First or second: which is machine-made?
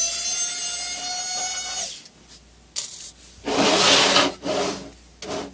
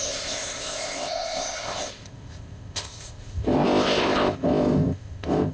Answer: second